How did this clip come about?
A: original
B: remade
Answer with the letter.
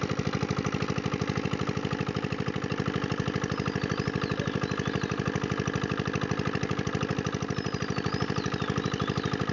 A